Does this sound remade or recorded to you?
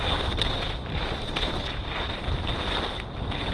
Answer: recorded